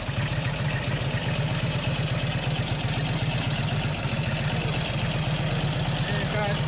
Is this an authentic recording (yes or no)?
yes